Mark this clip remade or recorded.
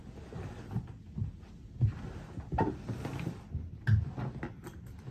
recorded